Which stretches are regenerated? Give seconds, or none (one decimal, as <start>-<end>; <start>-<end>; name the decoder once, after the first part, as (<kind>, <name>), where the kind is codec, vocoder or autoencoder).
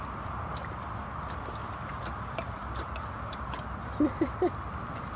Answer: none